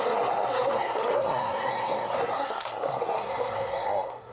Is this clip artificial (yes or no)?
yes